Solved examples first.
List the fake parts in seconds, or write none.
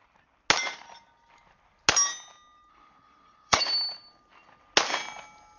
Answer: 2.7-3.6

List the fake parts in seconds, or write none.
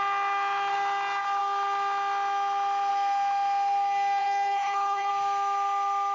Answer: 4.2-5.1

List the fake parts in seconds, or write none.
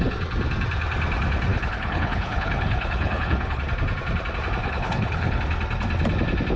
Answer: 1.5-3.6; 4.6-5.4